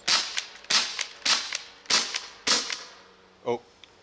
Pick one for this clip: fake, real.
real